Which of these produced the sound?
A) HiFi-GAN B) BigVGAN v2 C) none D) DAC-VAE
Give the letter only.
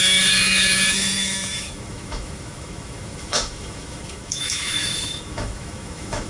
D